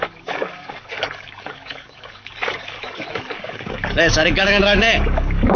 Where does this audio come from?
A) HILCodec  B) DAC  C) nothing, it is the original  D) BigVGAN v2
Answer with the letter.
B